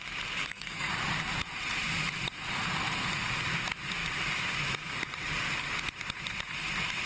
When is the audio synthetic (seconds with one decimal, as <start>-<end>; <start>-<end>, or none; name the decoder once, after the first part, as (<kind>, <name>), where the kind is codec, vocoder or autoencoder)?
0.4-0.9 (codec, SNAC)